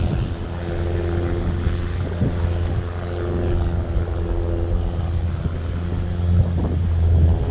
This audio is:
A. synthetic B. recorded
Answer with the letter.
B